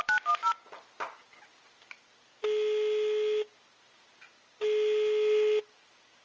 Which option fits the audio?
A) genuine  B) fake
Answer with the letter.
A